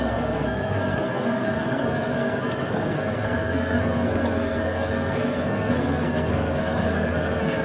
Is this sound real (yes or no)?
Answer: no